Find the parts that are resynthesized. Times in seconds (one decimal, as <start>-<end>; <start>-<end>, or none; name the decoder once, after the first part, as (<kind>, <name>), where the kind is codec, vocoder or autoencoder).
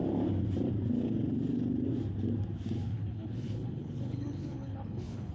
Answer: 2.8-5.3 (codec, HILCodec)